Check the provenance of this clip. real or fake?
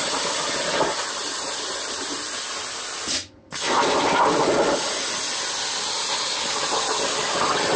real